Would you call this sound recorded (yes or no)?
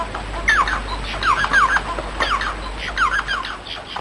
yes